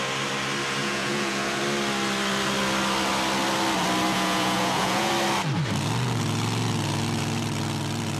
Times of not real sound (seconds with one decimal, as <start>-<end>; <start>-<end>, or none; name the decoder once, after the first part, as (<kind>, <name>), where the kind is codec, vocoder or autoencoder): 0.8-1.6 (vocoder, Vocos); 4.1-5.1